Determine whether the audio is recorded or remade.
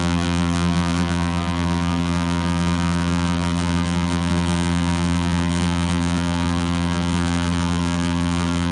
remade